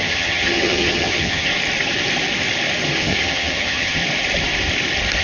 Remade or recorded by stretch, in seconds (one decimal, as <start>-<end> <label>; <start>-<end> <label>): 0.0-1.5 remade; 1.5-3.0 recorded; 3.0-4.0 remade; 4.0-5.2 recorded